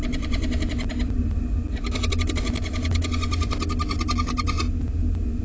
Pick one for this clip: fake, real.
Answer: real